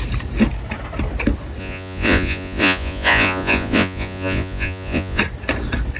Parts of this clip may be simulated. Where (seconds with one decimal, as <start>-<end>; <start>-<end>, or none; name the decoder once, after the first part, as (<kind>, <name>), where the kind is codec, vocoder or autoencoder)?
1.6-5.2 (vocoder, Vocos)